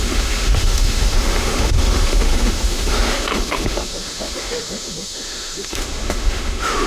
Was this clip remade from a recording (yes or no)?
yes